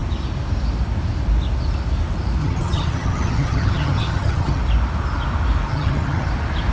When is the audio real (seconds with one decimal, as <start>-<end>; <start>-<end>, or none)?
0.0-2.4; 4.6-5.7; 6.3-6.7